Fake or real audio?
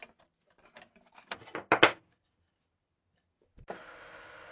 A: real